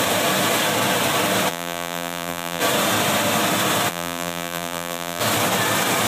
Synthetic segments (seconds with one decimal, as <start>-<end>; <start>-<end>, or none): 1.5-2.6; 3.9-5.2